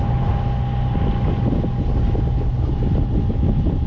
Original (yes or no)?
yes